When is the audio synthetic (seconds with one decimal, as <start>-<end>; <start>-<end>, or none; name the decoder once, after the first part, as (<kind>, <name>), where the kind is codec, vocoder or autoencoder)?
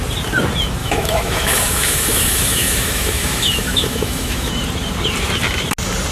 0.8-4.5 (autoencoder, DAC-VAE)